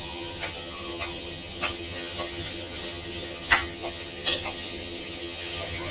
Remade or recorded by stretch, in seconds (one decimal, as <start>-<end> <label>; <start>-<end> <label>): 0.0-5.9 remade